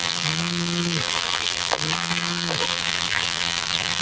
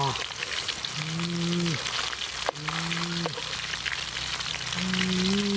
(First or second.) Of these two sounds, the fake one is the first